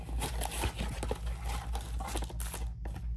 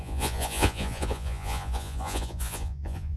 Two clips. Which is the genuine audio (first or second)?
first